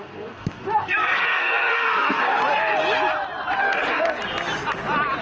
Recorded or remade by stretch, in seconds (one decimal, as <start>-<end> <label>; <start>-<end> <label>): 0.0-2.4 remade; 2.4-3.6 recorded; 3.6-4.2 remade; 4.2-5.2 recorded